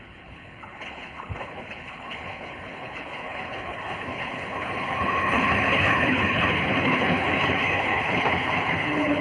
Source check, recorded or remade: remade